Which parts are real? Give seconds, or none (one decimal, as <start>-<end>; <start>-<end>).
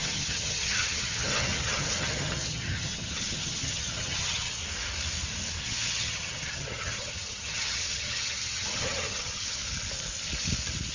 4.6-5.6; 9.6-10.9